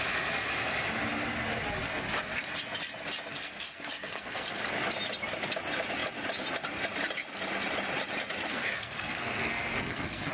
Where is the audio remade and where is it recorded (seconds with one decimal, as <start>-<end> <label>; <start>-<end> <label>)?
0.0-3.3 recorded; 3.3-4.6 remade; 4.6-8.5 recorded; 8.5-10.3 remade